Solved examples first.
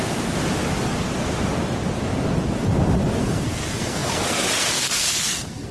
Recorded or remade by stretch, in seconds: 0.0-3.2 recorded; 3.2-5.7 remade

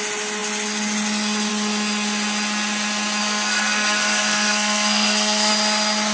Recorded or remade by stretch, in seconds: 0.0-3.2 recorded; 3.2-5.5 remade; 5.5-6.1 recorded

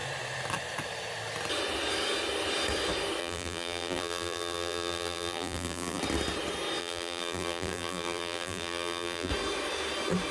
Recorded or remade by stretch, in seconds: 0.0-3.2 recorded; 3.2-6.0 remade; 6.0-6.8 recorded; 6.8-9.3 remade; 9.3-10.3 recorded

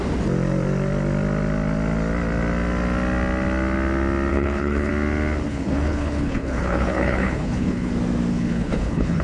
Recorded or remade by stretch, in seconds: 0.0-4.3 recorded; 4.3-4.9 remade; 4.9-5.5 recorded; 5.5-7.9 remade; 7.9-8.3 recorded; 8.3-9.2 remade